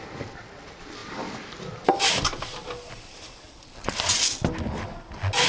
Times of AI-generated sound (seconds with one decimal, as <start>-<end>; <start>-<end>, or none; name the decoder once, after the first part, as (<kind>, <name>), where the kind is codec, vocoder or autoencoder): none